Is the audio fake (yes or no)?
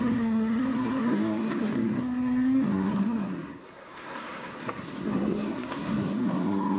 yes